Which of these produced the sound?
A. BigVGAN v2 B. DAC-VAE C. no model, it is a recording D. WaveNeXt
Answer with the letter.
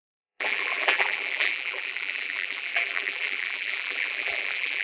A